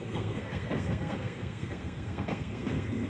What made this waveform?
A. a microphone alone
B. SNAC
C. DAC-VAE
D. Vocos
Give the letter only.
B